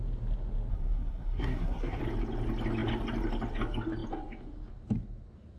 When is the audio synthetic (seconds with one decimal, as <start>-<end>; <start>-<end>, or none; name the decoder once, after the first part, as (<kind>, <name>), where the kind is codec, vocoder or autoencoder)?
0.7-2.0 (codec, SNAC)